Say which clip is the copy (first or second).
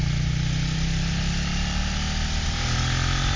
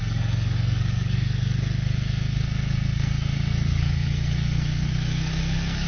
second